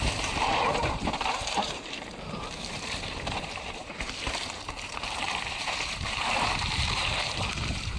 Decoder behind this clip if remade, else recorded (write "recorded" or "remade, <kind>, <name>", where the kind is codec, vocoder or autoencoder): remade, vocoder, BigVGAN v2